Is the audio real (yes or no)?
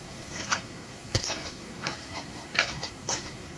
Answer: no